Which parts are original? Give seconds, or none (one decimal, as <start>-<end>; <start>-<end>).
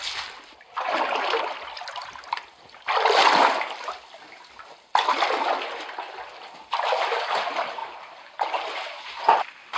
0.0-7.8; 9.2-9.8